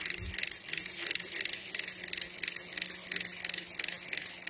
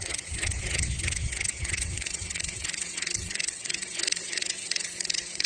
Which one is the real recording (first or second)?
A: first